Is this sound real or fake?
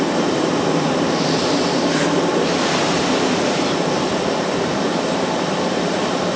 fake